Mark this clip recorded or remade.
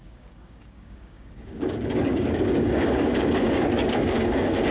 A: remade